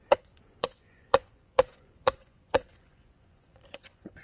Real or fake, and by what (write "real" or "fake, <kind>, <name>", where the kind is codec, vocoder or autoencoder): fake, vocoder, Vocos